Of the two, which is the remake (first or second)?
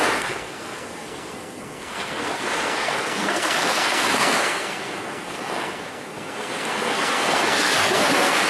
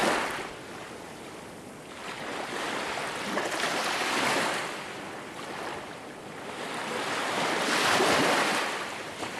first